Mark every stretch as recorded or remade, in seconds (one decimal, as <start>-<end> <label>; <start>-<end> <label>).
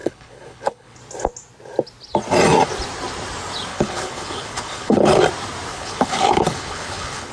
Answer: 0.0-1.0 remade; 1.0-3.7 recorded; 3.7-5.2 remade; 5.2-5.7 recorded; 5.7-7.3 remade